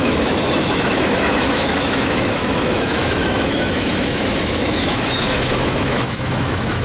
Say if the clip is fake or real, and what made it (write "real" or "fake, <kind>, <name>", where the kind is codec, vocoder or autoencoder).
fake, autoencoder, DAC-VAE